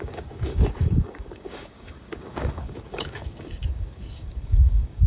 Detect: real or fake fake